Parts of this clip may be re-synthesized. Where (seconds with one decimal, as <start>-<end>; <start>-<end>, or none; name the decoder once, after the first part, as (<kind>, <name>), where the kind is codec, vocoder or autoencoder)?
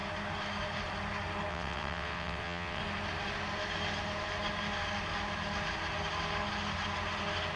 1.5-2.8 (vocoder, WaveNeXt)